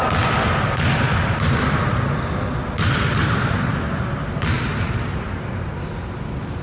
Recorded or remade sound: recorded